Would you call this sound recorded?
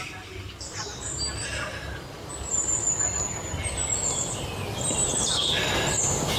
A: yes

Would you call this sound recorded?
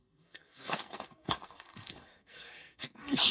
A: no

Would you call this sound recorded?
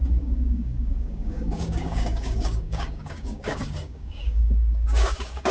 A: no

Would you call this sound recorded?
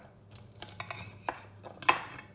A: yes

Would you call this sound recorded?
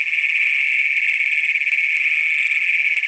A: yes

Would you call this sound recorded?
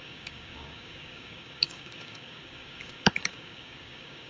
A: no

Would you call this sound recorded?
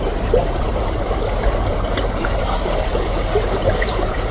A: no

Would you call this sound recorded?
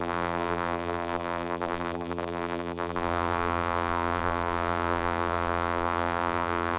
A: no